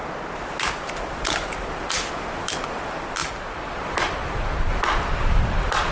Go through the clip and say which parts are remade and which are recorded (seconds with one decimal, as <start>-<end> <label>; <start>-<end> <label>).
0.0-2.1 recorded; 2.1-3.2 remade; 3.2-4.7 recorded; 4.7-5.9 remade